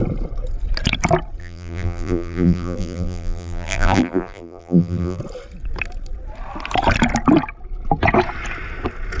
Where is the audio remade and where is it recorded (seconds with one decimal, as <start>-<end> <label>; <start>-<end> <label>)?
0.0-1.4 recorded; 1.4-5.2 remade; 5.2-9.2 recorded